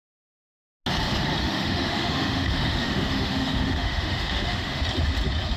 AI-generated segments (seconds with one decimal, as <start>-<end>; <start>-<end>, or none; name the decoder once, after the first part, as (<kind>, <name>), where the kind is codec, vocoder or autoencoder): 1.4-4.8 (autoencoder, DAC-VAE)